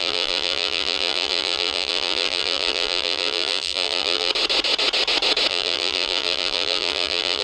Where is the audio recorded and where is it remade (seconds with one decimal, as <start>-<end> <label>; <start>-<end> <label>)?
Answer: 0.0-4.3 remade; 4.3-5.5 recorded; 5.5-7.4 remade